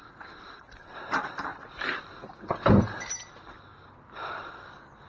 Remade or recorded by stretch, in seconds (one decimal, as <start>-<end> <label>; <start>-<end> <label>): 0.0-1.5 recorded; 1.5-2.4 remade; 2.4-3.7 recorded; 3.7-4.5 remade; 4.5-5.1 recorded